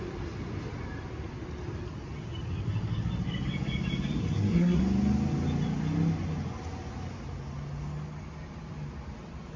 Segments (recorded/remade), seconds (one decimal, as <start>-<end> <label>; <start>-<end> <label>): 0.0-4.2 recorded; 4.2-4.8 remade; 4.8-9.6 recorded